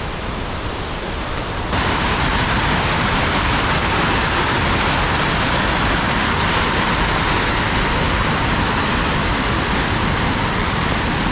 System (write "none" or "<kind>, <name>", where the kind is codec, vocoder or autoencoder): none